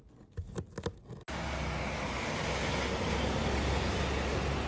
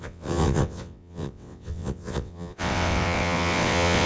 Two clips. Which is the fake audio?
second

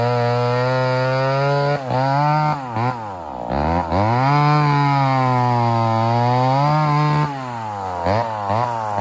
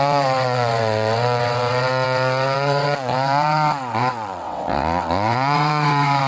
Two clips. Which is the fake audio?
second